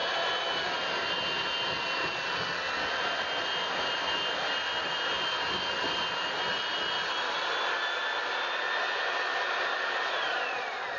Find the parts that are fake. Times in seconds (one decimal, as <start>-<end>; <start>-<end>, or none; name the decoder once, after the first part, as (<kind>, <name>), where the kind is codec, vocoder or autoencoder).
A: none